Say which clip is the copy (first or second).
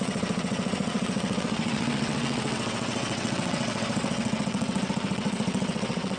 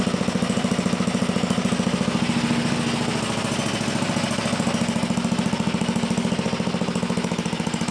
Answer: first